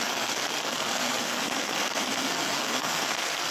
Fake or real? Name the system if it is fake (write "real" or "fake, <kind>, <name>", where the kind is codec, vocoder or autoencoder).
fake, codec, SNAC